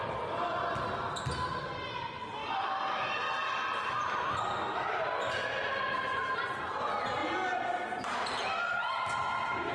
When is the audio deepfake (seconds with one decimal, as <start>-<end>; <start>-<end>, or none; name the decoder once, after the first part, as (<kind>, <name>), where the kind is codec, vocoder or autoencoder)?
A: none